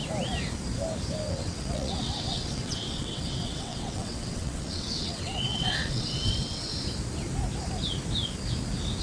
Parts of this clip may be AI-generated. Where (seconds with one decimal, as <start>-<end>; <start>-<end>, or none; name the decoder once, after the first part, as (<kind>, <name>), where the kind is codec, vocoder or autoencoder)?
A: 1.3-6.7 (vocoder, WaveNeXt)